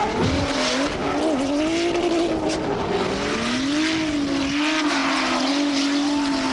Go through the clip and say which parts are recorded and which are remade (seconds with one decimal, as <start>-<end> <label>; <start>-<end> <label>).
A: 0.0-6.5 recorded